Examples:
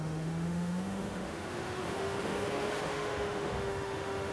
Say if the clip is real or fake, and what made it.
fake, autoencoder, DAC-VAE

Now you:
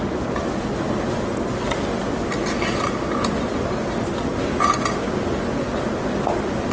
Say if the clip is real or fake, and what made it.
real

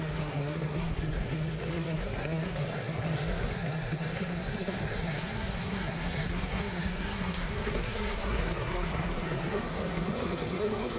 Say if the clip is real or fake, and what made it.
fake, codec, SNAC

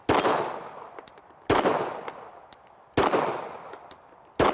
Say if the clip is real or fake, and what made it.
real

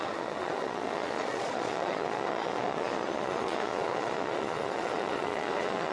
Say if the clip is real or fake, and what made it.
fake, vocoder, Vocos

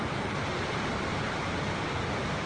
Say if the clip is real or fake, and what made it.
fake, vocoder, BigVGAN v2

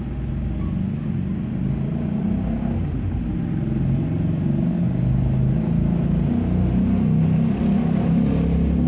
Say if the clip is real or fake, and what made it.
real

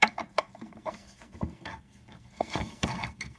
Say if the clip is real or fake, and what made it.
fake, codec, SNAC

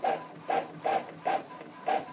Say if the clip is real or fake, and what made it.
real